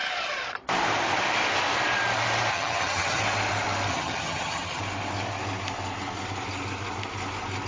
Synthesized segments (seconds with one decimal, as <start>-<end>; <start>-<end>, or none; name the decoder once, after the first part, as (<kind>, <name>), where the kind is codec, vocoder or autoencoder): 2.5-3.2 (vocoder, HiFi-GAN); 3.9-4.8